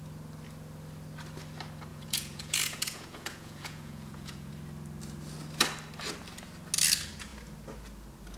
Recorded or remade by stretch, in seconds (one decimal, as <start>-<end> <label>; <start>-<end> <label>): 0.0-1.9 recorded; 1.9-4.5 remade; 4.5-8.4 recorded